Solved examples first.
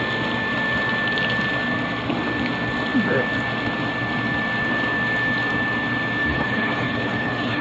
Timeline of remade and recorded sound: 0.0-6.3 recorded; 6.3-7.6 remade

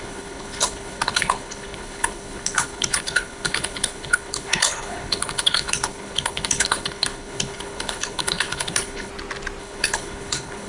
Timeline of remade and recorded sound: 0.0-9.1 remade; 9.1-9.6 recorded; 9.6-10.7 remade

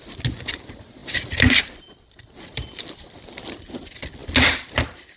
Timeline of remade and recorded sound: 0.0-5.2 recorded

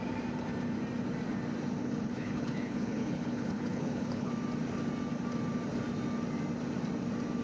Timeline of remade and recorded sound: 0.0-1.8 recorded; 1.8-4.3 remade; 4.3-7.4 recorded

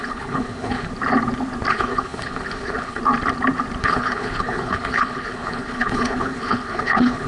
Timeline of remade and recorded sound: 0.0-0.9 remade; 0.9-1.7 recorded; 1.7-3.0 remade; 3.0-3.8 recorded; 3.8-7.3 remade